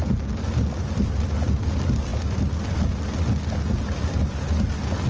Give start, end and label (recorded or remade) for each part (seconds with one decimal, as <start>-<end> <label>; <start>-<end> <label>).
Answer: 0.0-5.1 recorded

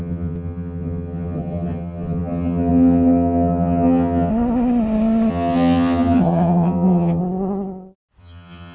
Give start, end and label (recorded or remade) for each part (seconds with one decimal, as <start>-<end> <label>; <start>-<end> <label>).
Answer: 0.0-4.3 remade; 4.3-5.3 recorded; 5.3-7.2 remade; 7.2-8.2 recorded; 8.2-8.7 remade

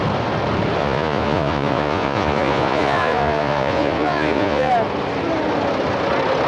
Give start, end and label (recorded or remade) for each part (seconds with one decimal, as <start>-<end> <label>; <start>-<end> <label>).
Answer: 0.0-0.8 recorded; 0.8-4.7 remade; 4.7-6.5 recorded